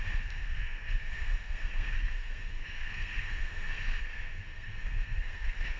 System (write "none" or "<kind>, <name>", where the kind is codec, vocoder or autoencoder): codec, SNAC